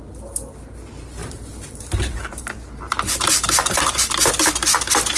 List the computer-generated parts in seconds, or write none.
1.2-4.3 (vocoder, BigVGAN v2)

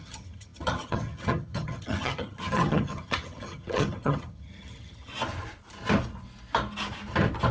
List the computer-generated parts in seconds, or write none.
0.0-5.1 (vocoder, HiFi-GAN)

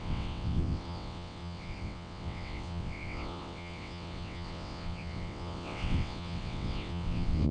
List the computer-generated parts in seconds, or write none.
0.0-7.5 (vocoder, WaveNeXt)